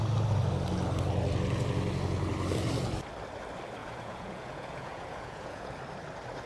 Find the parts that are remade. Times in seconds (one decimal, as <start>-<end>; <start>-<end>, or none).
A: 3.8-5.8